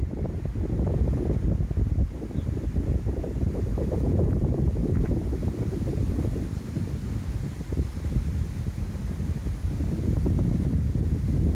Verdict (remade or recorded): recorded